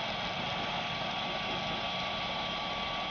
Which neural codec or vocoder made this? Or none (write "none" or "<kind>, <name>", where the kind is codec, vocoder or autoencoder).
none